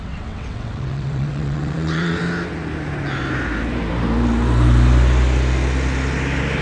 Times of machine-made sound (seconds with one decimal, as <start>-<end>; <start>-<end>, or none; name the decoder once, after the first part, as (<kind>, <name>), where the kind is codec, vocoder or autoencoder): 0.0-2.2 (vocoder, WaveNeXt)